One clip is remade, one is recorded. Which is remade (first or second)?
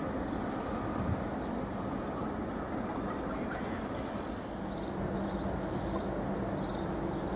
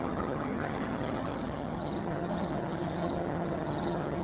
second